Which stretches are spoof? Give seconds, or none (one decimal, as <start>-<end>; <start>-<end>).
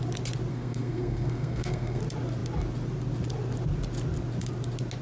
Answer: 0.5-2.0